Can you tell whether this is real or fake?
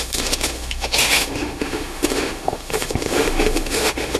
fake